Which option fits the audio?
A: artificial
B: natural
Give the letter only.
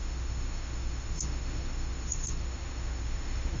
A